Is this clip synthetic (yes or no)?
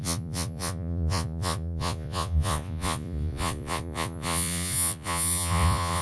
yes